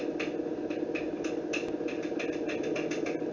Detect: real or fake real